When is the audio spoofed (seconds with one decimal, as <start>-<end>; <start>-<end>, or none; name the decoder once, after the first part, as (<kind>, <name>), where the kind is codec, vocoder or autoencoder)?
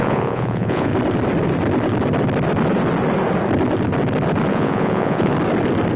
0.0-0.9 (vocoder, Vocos); 4.5-5.3